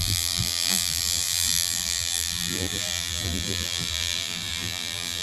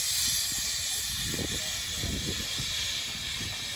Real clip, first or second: second